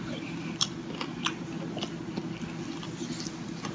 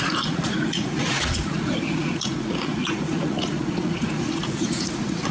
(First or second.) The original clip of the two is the first